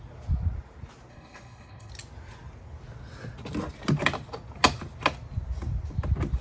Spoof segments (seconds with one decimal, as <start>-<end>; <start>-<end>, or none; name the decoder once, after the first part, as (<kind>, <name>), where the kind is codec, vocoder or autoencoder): 1.1-1.9 (codec, HILCodec)